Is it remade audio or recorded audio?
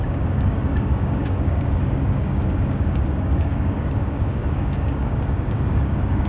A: remade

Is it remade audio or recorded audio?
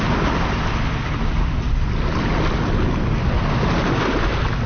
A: recorded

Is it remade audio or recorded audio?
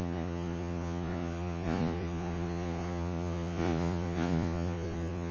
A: remade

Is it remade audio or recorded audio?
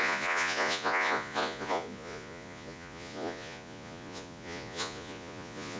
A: remade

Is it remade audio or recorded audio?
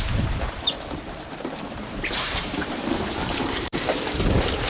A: remade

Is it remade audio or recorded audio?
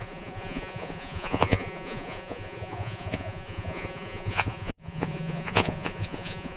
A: remade